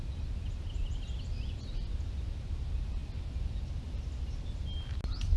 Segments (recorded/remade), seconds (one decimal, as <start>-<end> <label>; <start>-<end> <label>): 0.0-5.4 recorded